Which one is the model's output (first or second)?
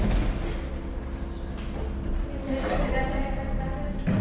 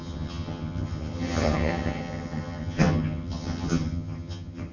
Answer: second